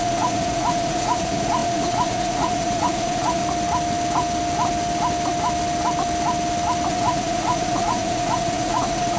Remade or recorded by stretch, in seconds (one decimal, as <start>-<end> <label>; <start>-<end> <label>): 0.0-3.4 remade; 3.4-6.9 recorded; 6.9-9.2 remade